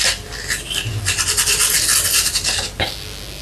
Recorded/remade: recorded